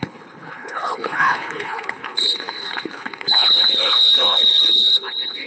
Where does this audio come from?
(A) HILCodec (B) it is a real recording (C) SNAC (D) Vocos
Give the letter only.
A